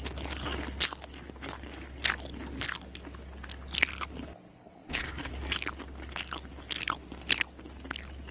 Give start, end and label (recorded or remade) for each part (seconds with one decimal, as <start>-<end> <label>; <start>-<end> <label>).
0.0-4.5 recorded; 4.5-5.3 remade; 5.3-8.3 recorded

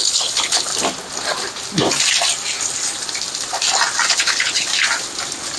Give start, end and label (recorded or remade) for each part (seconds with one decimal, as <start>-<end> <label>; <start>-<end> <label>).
0.0-0.7 remade; 0.7-4.1 recorded; 4.1-4.7 remade; 4.7-5.6 recorded

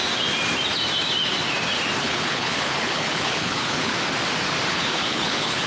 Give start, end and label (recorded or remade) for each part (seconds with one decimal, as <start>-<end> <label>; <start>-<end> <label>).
0.0-2.0 recorded; 2.0-3.9 remade; 3.9-4.7 recorded; 4.7-5.7 remade